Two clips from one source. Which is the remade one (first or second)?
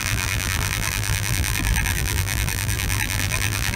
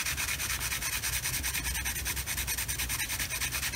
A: first